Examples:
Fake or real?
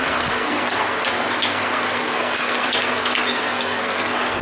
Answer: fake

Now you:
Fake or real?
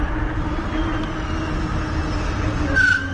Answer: real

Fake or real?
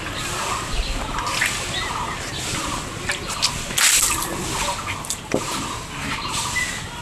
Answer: real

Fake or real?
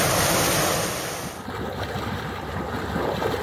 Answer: real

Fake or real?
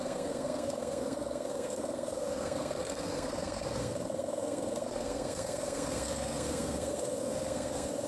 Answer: fake